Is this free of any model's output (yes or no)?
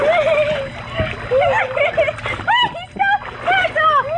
yes